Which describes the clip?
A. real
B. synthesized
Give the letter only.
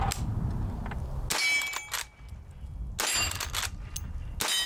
A